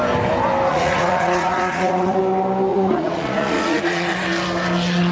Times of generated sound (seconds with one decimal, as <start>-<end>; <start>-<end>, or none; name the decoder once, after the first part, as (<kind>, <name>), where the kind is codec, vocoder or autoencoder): 0.7-2.2 (vocoder, Vocos); 2.7-4.1